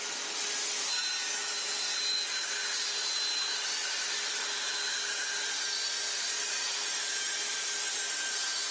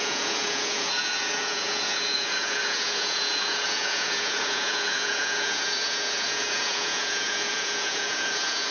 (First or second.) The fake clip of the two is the second